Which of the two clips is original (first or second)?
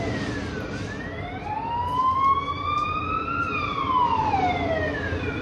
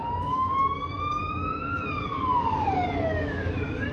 first